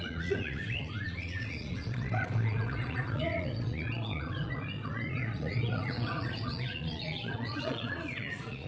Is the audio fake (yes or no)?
yes